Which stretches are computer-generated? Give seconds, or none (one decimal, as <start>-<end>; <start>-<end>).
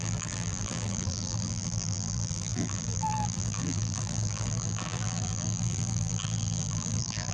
0.0-7.3